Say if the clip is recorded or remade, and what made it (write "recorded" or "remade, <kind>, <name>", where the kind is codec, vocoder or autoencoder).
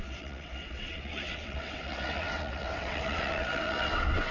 remade, vocoder, WaveNeXt